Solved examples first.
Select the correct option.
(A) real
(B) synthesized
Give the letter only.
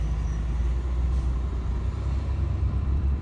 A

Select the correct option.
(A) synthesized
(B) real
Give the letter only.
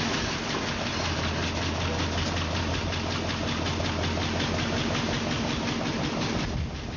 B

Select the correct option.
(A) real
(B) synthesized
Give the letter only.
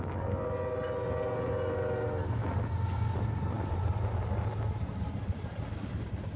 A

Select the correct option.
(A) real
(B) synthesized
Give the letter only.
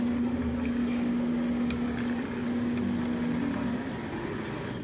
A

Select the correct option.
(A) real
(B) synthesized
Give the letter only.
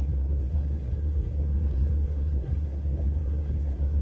B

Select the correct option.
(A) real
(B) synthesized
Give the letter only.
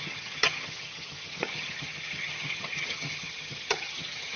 B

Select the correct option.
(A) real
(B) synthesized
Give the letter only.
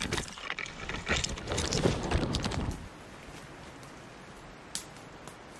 A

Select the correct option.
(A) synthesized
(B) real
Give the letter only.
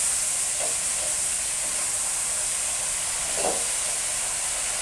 A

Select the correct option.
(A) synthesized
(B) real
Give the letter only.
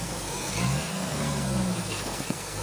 A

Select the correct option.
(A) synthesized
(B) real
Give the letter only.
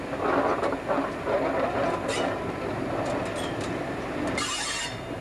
B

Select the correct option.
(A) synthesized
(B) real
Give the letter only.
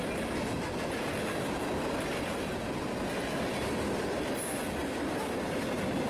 B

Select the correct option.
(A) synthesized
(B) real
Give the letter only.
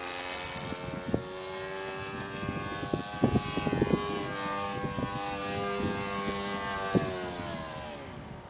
B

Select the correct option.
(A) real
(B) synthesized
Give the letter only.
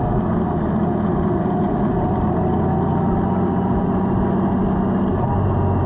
A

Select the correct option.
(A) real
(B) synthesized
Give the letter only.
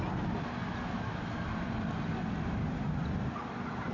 B